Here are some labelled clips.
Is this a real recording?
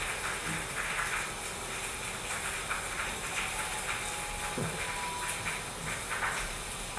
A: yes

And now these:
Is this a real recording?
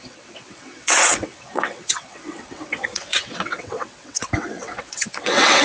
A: no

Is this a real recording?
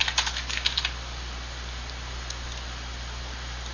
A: yes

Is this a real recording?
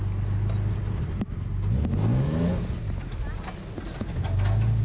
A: yes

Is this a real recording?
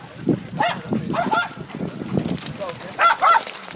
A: yes